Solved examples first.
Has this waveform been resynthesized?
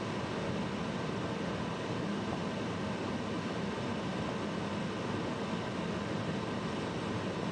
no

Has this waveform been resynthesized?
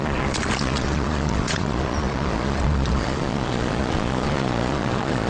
yes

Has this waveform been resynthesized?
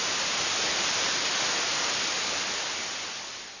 no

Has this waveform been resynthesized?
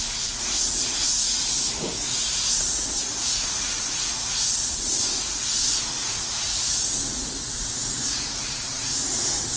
yes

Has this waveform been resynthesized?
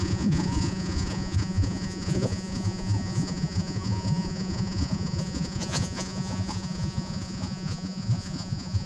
yes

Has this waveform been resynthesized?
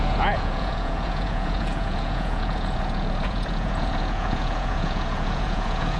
yes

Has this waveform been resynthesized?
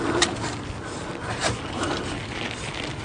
no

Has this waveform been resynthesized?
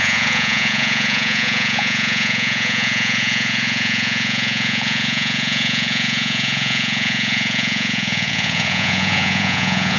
yes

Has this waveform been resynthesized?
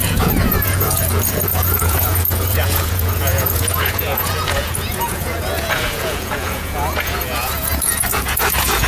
yes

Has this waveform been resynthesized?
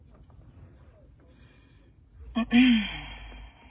no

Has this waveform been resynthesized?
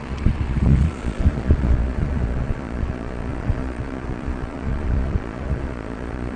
yes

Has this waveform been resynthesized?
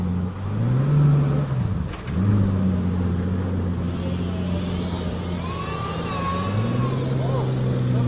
no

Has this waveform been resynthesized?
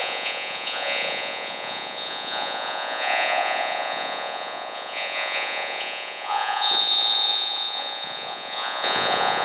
yes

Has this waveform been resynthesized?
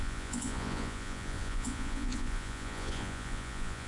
yes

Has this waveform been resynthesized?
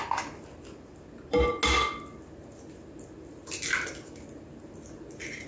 no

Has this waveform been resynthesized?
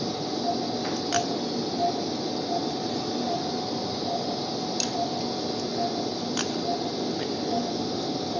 no